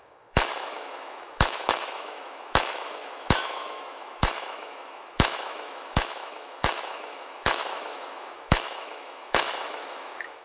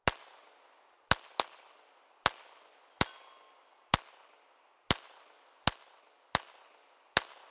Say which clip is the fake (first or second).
first